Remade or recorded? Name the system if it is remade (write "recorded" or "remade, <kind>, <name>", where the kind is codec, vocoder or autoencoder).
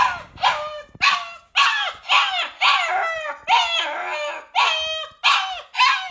recorded